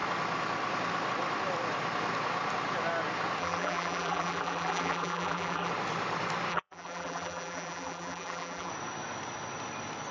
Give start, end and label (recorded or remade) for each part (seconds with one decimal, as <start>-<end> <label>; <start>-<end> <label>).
0.0-3.4 recorded; 3.4-5.7 remade; 5.7-6.5 recorded; 6.5-8.7 remade; 8.7-10.1 recorded